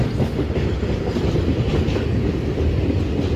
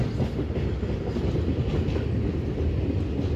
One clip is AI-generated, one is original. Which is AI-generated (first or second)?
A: first